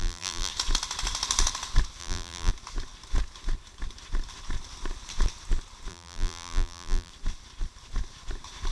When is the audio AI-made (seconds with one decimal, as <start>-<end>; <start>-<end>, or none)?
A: 0.0-0.5; 2.0-2.5; 5.9-7.1